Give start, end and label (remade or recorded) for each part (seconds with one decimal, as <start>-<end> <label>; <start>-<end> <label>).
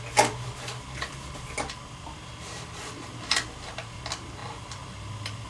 0.0-5.5 recorded